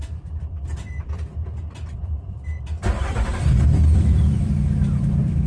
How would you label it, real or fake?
fake